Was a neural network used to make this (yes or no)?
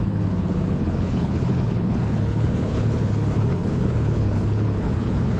yes